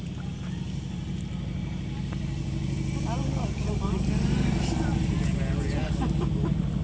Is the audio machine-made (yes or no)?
no